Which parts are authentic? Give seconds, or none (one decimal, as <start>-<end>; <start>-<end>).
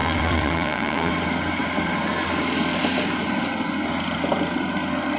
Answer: 1.1-5.2